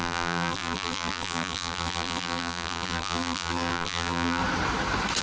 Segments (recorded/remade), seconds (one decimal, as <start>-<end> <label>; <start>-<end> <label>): 0.0-4.4 remade; 4.4-5.2 recorded